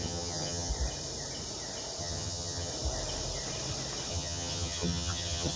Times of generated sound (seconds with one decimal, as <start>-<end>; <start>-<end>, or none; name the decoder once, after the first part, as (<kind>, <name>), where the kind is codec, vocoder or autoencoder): 0.0-0.7 (vocoder, HiFi-GAN); 2.0-2.7; 4.1-5.6